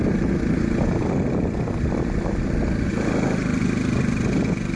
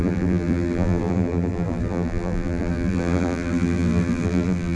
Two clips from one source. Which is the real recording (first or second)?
first